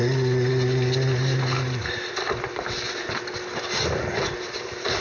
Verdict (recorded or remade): recorded